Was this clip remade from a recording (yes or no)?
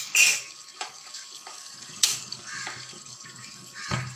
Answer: yes